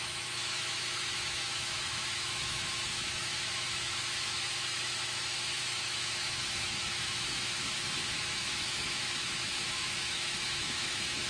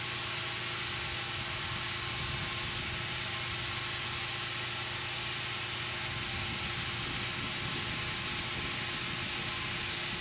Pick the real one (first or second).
second